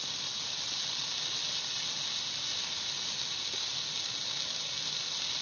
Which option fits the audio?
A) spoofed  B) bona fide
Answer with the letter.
B